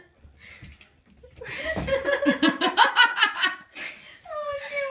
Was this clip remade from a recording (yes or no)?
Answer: no